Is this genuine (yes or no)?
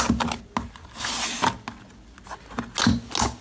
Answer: yes